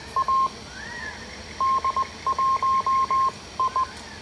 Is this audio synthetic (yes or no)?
no